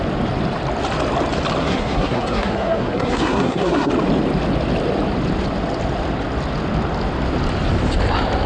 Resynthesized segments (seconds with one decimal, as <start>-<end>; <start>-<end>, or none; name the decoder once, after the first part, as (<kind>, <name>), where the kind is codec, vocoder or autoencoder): 1.6-3.9 (codec, SNAC)